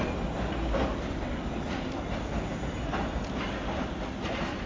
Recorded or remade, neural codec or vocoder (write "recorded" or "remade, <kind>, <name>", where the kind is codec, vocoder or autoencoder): recorded